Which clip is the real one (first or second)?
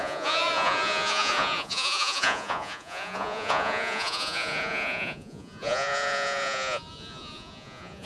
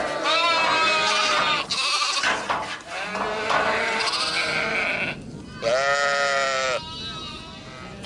second